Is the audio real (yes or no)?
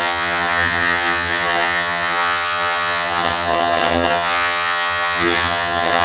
no